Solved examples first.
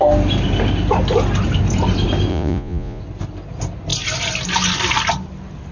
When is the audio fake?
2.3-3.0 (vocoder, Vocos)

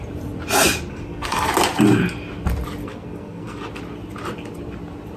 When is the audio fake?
0.9-1.5 (codec, SNAC); 2.8-3.7

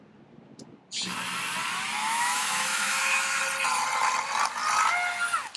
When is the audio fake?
2.0-3.4 (autoencoder, DAC-VAE)